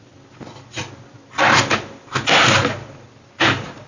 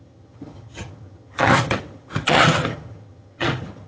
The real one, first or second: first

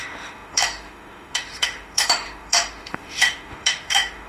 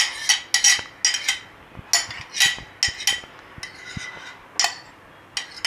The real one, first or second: second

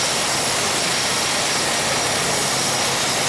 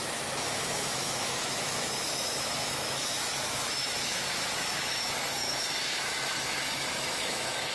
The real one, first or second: first